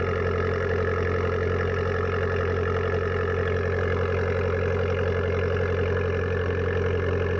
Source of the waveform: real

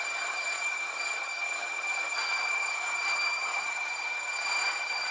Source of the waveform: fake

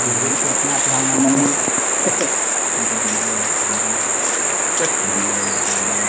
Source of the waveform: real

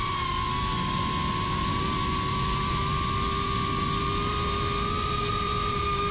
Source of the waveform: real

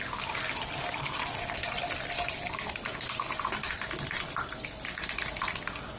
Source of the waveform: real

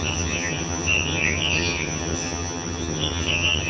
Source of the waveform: fake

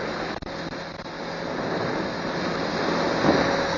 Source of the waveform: real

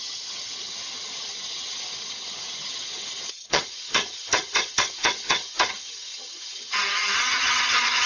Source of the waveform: fake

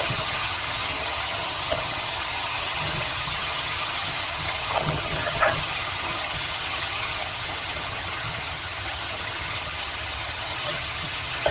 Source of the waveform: fake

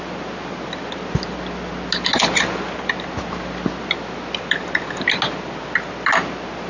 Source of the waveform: real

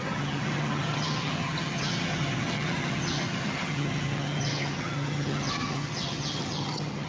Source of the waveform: fake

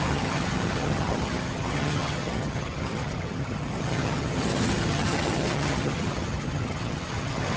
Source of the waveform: fake